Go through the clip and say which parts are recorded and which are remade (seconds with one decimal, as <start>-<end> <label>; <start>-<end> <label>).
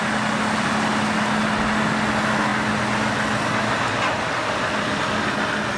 0.0-5.8 recorded